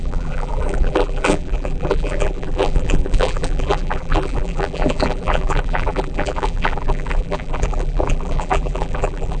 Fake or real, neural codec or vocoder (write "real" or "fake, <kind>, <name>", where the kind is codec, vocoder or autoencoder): fake, vocoder, BigVGAN v2